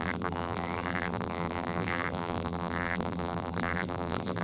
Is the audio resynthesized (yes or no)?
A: yes